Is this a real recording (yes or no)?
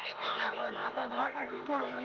no